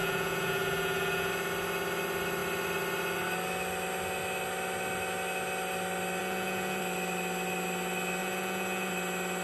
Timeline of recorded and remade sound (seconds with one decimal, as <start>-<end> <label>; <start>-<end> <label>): 0.0-1.3 remade; 1.3-6.2 recorded; 6.2-6.8 remade; 6.8-8.2 recorded; 8.2-8.9 remade; 8.9-9.4 recorded